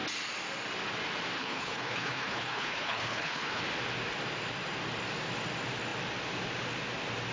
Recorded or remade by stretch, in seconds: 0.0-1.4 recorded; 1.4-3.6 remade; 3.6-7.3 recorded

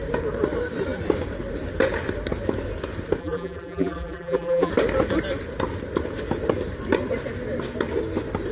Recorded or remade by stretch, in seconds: 0.0-3.2 recorded; 3.2-4.7 remade; 4.7-8.5 recorded

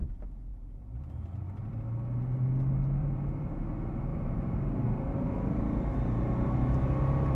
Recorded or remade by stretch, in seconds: 0.0-0.5 recorded; 0.5-1.1 remade; 1.1-3.0 recorded; 3.0-3.6 remade; 3.6-4.1 recorded; 4.1-5.6 remade; 5.6-7.3 recorded

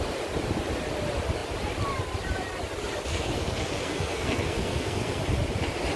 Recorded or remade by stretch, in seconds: 0.0-3.1 recorded; 3.1-5.2 remade; 5.2-6.0 recorded

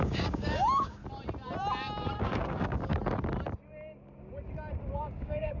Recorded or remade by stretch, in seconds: 0.0-1.0 remade; 1.0-2.1 recorded; 2.1-2.9 remade; 2.9-5.0 recorded; 5.0-5.6 remade

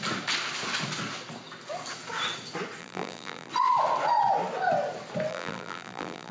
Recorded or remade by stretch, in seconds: 0.0-2.8 recorded; 2.8-3.5 remade; 3.5-5.3 recorded; 5.3-6.3 remade